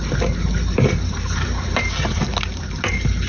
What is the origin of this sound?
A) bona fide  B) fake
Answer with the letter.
B